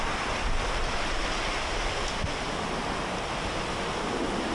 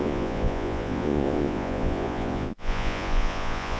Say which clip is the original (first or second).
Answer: first